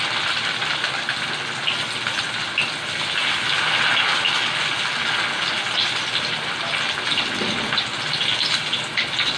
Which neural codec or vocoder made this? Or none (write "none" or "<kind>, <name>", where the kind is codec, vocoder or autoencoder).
none